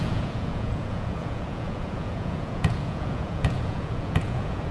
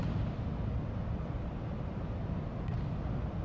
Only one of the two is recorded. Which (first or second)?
second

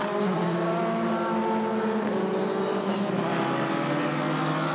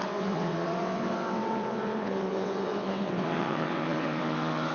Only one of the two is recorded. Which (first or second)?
first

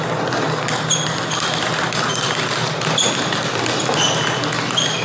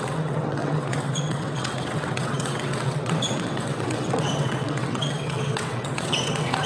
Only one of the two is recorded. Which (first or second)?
first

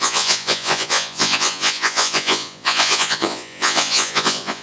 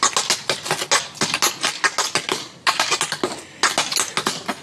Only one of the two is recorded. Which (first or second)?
second